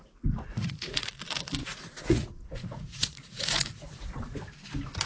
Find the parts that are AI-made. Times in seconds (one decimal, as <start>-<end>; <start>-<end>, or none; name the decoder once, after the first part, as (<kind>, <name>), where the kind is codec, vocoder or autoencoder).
0.5-1.1 (vocoder, Vocos); 1.6-4.1

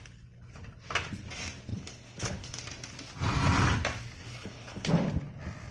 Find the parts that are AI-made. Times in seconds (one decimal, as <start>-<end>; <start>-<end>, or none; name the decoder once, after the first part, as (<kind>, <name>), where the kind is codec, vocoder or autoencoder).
1.7-2.6 (codec, HILCodec); 4.2-4.9